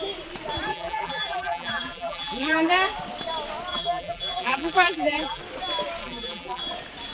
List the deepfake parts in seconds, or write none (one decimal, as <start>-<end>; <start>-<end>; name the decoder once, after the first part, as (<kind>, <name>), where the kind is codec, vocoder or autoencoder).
0.7-2.7 (vocoder, BigVGAN v2); 3.7-5.4; 6.0-6.6